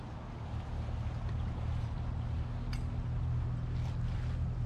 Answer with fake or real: real